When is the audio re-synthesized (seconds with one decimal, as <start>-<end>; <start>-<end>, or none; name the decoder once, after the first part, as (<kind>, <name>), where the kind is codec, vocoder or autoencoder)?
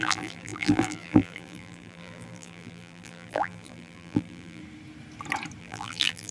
0.0-4.6 (vocoder, BigVGAN v2); 5.6-6.3